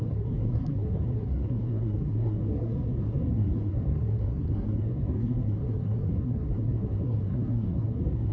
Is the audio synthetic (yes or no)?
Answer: yes